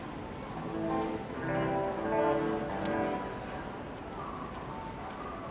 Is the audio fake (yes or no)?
no